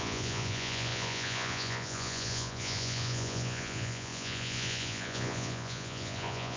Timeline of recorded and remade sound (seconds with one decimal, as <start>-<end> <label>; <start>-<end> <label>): 0.0-6.6 remade